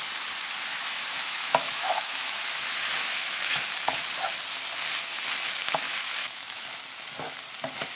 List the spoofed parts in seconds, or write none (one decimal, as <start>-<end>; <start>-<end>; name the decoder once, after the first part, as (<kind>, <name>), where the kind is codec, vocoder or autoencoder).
0.7-3.6 (autoencoder, DAC-VAE); 5.6-6.6